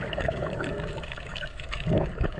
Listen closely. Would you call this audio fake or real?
fake